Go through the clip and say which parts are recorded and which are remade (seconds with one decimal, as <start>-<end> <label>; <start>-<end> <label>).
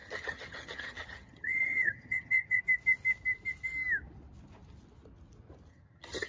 0.0-2.6 remade; 2.6-5.7 recorded; 5.7-6.3 remade